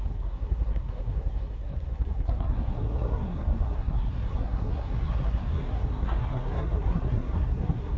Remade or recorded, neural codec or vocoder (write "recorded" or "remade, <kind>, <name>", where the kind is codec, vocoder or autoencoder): remade, codec, SNAC